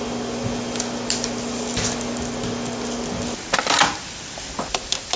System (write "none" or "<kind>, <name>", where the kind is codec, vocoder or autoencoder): none